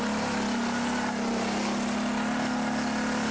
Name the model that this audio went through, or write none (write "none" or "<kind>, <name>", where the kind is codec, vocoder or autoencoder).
none